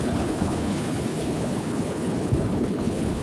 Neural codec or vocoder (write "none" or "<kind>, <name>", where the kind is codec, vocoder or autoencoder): codec, HILCodec